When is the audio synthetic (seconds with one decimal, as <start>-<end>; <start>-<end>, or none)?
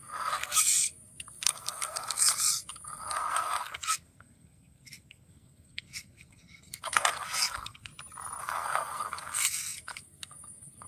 0.0-7.9; 8.4-10.9